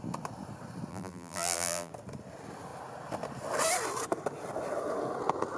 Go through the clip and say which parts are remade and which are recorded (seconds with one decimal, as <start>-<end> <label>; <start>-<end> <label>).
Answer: 0.0-0.9 recorded; 0.9-1.9 remade; 1.9-5.6 recorded